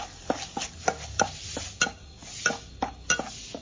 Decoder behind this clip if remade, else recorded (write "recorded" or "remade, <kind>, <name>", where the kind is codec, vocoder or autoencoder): recorded